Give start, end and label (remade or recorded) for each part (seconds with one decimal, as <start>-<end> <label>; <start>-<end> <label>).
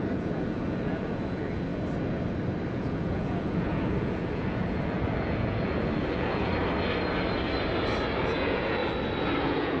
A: 0.0-1.7 remade; 1.7-2.7 recorded; 2.7-6.5 remade; 6.5-8.2 recorded; 8.2-8.8 remade; 8.8-9.4 recorded; 9.4-9.8 remade